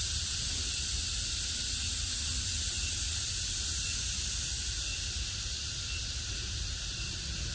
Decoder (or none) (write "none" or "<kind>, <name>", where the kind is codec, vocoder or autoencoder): none